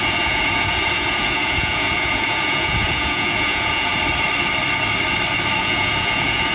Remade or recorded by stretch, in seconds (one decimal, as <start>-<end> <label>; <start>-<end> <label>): 0.0-3.9 remade; 3.9-5.6 recorded; 5.6-6.5 remade